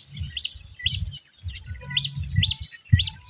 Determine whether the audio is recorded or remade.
recorded